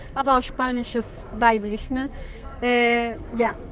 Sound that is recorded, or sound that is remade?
remade